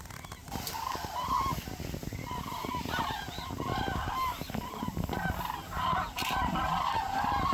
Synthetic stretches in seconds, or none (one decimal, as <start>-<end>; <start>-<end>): 0.0-1.5; 6.0-7.5